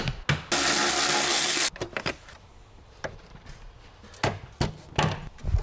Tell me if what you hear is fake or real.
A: real